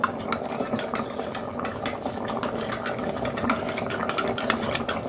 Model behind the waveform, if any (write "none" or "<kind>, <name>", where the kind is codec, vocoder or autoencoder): none